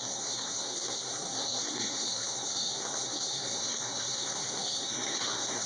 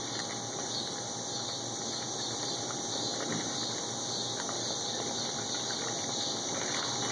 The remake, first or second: first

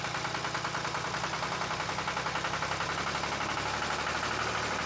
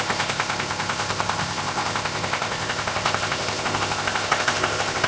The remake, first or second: second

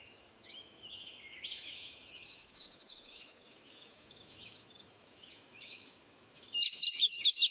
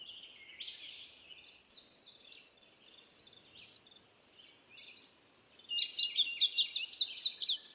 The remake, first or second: first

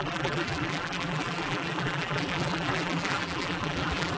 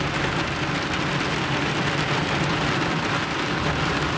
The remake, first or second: first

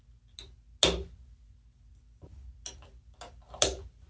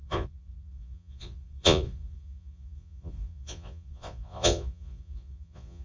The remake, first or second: second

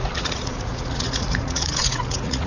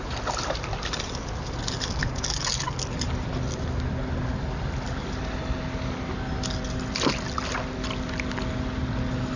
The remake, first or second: first